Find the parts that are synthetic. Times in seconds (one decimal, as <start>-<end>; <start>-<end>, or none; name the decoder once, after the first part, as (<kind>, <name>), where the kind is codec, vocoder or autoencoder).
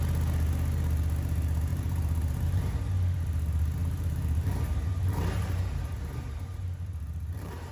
1.7-2.7 (vocoder, BigVGAN v2); 3.8-7.7